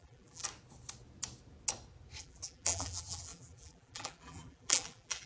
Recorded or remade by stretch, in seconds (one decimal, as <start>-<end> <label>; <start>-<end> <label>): 0.0-0.4 remade; 0.4-2.2 recorded; 2.2-5.3 remade